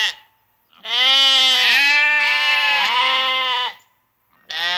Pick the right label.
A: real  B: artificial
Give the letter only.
A